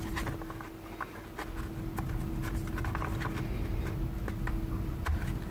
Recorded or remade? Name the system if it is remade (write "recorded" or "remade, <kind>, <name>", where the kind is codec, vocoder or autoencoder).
recorded